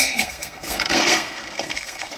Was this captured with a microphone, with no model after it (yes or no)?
no